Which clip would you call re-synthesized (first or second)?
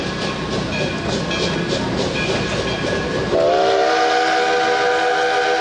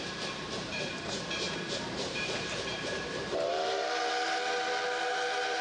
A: second